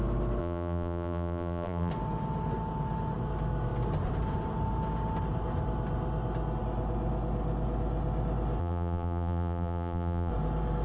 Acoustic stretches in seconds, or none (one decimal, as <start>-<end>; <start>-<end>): 0.0-0.4; 1.9-8.6; 10.3-10.8

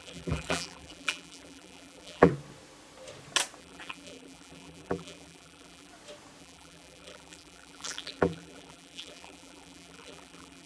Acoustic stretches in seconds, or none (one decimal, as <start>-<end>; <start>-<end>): 2.3-3.6; 5.9-6.4

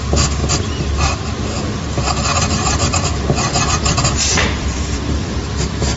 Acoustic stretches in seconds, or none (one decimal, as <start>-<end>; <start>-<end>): 0.0-4.6; 5.4-6.0